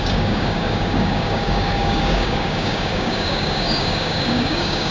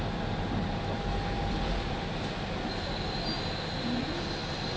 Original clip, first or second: second